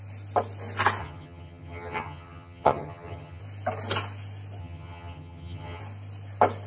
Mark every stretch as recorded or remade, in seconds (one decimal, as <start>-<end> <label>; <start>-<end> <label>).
0.0-1.0 recorded; 1.0-3.4 remade; 3.4-4.6 recorded; 4.6-5.8 remade; 5.8-6.7 recorded